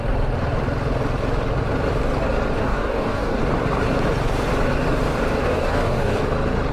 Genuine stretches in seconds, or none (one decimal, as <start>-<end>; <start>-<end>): 0.0-2.6; 3.4-5.4; 6.2-6.7